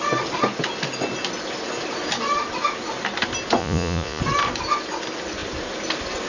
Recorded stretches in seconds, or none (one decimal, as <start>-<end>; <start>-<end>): 0.0-3.6; 4.2-6.3